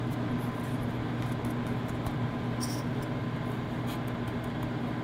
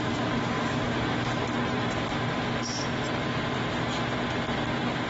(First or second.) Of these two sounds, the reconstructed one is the second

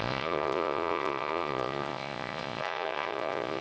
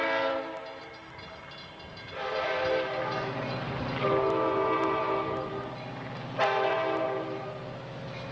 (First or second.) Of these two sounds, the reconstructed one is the first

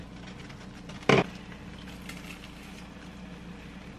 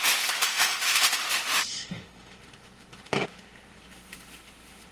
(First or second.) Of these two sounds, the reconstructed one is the second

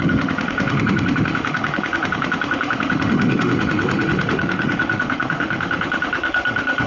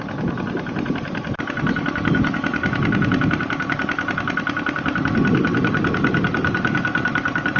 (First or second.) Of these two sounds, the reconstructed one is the first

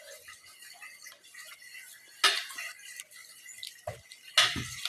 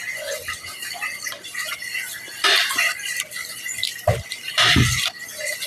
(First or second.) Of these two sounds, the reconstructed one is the second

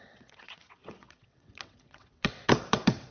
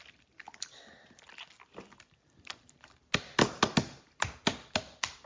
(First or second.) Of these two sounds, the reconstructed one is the first